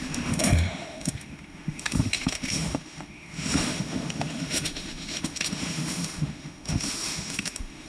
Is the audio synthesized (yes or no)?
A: yes